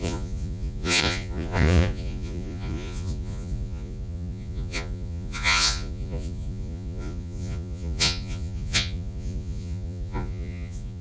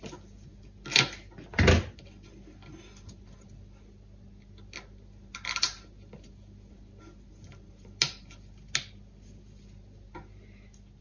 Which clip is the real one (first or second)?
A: second